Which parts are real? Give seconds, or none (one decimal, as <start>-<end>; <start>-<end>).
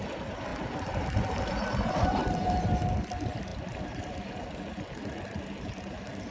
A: 0.0-0.5; 1.5-3.5; 4.1-6.3